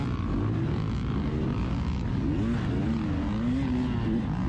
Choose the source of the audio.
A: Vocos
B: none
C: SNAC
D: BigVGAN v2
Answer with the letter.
B